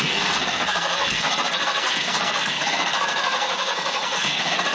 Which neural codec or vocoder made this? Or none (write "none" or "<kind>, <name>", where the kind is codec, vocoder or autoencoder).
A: codec, SNAC